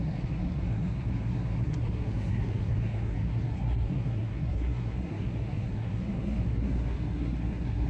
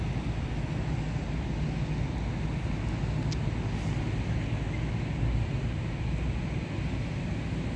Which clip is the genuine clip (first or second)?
second